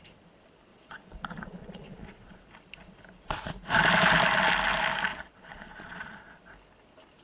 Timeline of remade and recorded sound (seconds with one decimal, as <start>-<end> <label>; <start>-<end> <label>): 0.0-0.7 recorded; 0.7-2.4 remade; 2.4-5.1 recorded; 5.1-6.4 remade; 6.4-7.2 recorded